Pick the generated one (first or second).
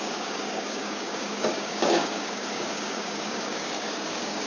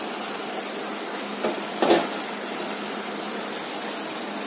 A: first